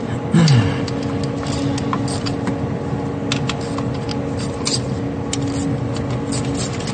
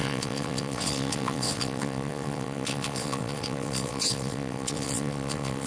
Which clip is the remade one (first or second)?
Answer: second